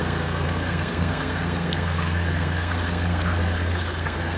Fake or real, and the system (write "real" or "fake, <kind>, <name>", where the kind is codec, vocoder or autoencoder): fake, codec, SNAC